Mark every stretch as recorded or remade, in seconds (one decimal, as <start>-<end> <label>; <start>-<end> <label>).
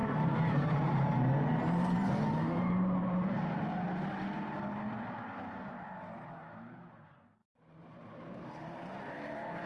0.0-3.3 remade; 3.3-7.4 recorded; 7.4-9.7 remade